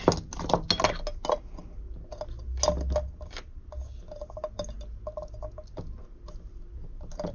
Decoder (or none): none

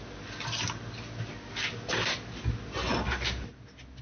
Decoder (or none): none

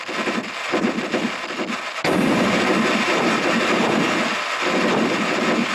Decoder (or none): none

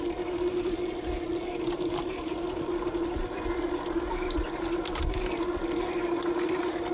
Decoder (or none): vocoder, BigVGAN v2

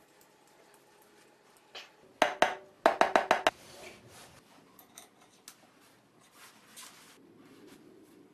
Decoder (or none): none